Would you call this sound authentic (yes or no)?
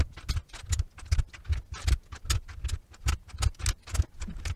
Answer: yes